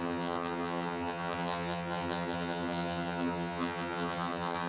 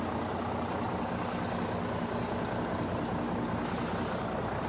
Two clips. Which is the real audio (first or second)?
second